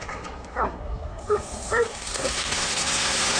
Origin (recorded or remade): remade